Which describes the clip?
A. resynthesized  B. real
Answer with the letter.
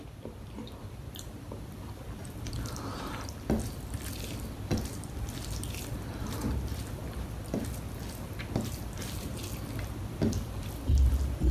A